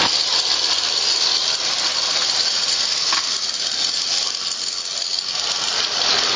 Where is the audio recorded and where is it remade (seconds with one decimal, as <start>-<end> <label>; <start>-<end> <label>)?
0.0-6.4 recorded